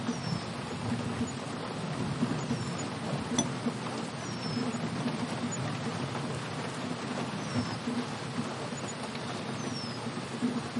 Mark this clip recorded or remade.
recorded